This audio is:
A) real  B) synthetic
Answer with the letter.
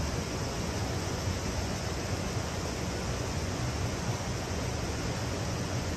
B